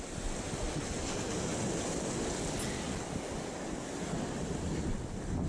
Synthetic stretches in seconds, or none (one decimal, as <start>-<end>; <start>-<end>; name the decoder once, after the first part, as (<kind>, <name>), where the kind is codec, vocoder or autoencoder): none